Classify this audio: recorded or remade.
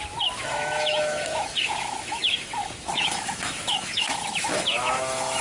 remade